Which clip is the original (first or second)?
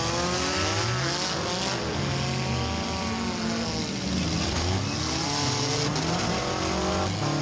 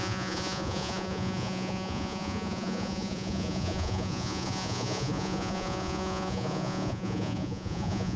first